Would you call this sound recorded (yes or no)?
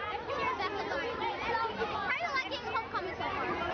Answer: yes